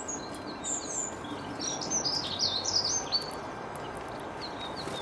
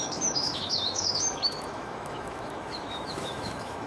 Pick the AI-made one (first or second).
second